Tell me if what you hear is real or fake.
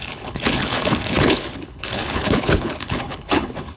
fake